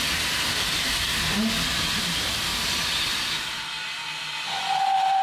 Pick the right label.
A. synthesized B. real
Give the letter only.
B